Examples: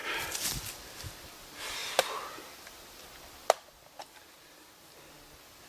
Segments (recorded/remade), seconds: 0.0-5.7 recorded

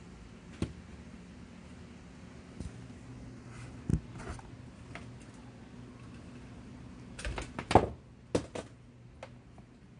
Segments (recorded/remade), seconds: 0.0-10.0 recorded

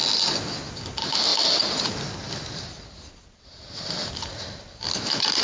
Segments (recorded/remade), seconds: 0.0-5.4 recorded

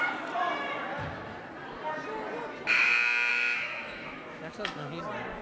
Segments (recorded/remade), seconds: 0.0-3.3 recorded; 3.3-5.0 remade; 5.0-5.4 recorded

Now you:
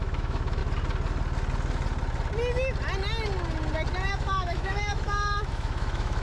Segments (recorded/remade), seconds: 0.0-0.6 remade; 0.6-4.1 recorded; 4.1-6.2 remade